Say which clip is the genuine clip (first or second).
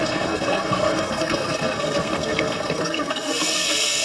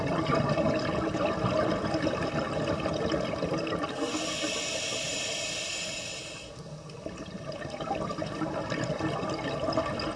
second